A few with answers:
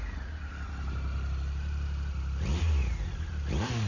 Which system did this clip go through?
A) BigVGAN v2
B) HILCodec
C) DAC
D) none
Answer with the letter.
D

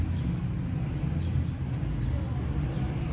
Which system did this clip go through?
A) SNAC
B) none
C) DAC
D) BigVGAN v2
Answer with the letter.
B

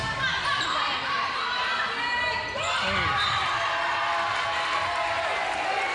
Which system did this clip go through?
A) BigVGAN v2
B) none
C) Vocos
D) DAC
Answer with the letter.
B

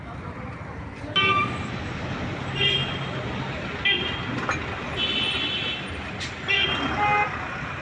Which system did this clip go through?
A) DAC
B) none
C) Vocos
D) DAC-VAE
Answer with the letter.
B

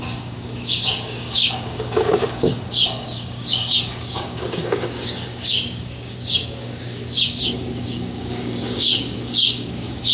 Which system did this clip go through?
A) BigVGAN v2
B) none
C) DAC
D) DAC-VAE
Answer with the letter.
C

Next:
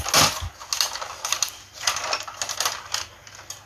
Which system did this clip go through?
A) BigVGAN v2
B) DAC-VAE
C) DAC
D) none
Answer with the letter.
D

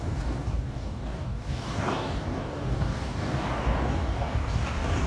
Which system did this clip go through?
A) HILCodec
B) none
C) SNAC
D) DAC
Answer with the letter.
D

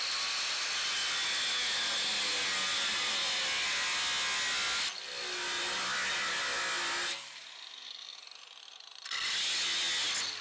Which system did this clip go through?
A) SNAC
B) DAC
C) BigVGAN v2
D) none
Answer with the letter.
D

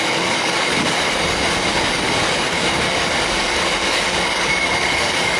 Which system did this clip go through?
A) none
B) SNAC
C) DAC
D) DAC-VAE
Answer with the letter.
C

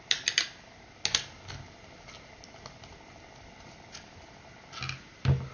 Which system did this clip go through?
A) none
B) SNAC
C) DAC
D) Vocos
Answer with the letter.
A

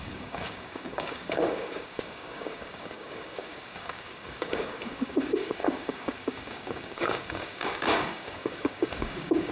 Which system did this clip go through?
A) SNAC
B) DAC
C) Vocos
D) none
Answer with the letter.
B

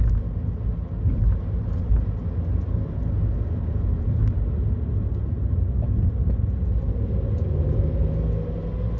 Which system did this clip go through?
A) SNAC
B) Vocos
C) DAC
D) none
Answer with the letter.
D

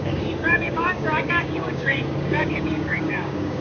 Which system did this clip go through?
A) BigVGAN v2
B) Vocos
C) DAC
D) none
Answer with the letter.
C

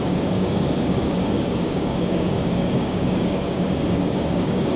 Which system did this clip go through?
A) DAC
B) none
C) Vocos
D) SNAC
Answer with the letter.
A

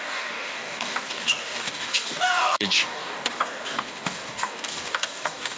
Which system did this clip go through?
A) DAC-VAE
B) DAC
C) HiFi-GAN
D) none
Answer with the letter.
B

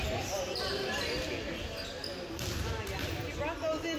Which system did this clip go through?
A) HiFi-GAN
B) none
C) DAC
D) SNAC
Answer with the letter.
B